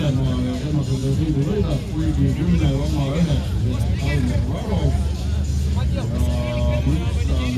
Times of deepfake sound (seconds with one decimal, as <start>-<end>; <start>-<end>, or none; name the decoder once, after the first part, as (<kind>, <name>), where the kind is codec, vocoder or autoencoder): none